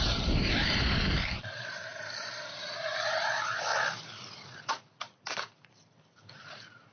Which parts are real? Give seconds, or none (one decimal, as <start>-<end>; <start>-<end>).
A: 3.7-4.7